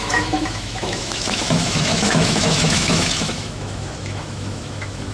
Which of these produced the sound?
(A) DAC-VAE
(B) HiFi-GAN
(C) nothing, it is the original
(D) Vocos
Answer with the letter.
A